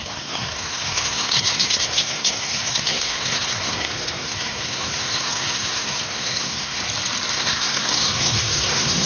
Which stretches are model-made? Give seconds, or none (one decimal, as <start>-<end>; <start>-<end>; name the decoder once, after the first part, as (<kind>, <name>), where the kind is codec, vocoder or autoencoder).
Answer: 0.0-6.8 (codec, SNAC); 7.3-9.1